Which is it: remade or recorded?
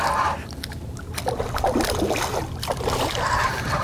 recorded